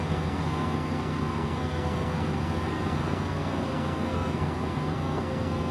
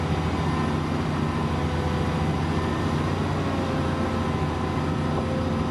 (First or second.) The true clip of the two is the second